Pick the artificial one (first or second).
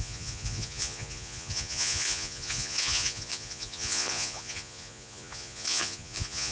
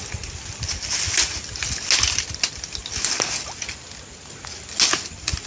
first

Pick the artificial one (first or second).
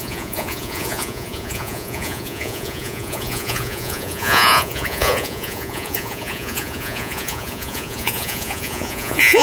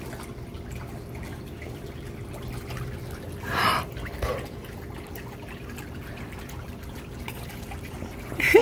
first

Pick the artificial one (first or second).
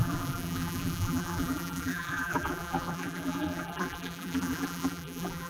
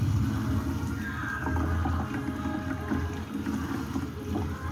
first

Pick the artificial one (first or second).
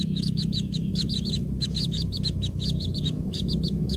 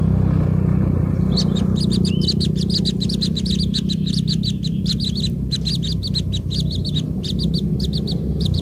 first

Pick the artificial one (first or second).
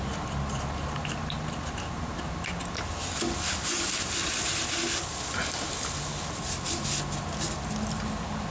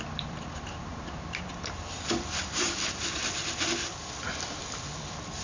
second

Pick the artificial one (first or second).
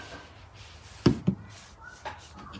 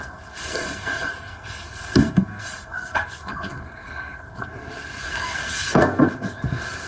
second